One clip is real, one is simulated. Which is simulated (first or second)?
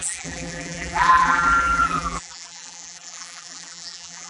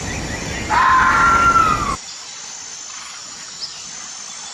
first